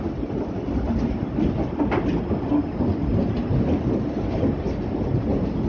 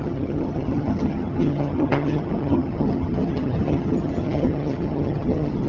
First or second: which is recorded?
first